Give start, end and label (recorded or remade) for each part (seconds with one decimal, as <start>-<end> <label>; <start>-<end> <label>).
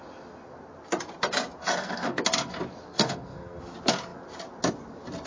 0.0-1.6 recorded; 1.6-2.2 remade; 2.2-2.9 recorded; 2.9-3.6 remade; 3.6-5.3 recorded